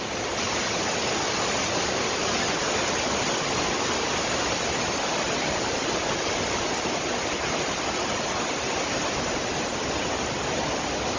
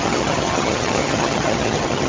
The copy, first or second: second